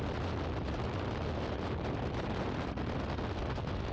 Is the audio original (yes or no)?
yes